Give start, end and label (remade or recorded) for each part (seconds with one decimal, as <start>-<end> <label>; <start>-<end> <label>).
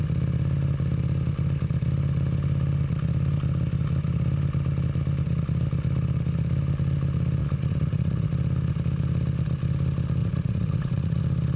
0.0-7.4 recorded; 7.4-8.3 remade; 8.3-10.2 recorded; 10.2-11.2 remade; 11.2-11.6 recorded